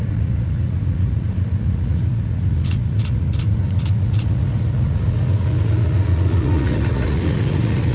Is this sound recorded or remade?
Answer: remade